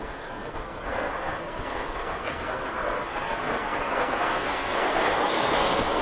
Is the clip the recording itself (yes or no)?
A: no